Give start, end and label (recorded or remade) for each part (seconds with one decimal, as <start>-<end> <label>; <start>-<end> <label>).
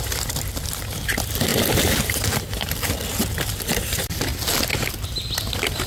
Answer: 0.0-5.9 recorded